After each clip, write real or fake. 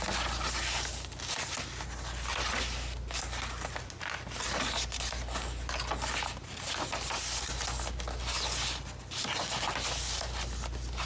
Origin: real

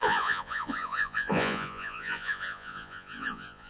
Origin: fake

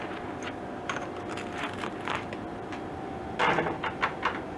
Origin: real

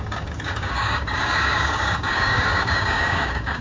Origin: fake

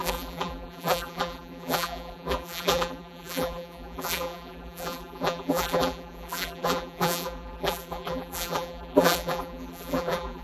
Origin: fake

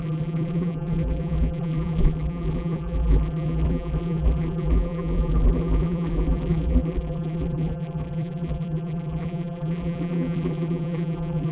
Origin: fake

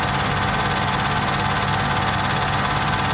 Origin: real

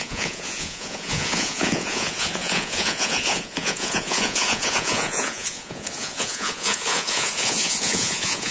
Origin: fake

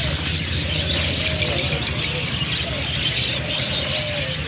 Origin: real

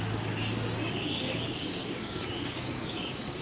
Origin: fake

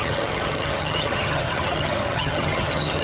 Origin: fake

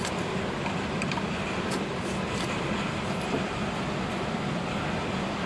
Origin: fake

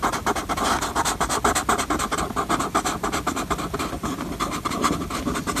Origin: real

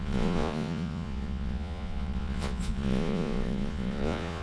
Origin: fake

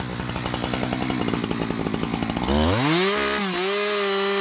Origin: real